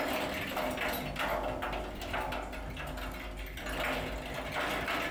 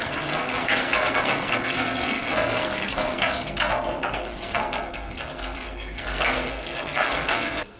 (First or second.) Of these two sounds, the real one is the first